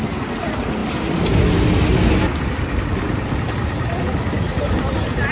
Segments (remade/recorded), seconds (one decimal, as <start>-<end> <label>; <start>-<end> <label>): 0.0-5.3 recorded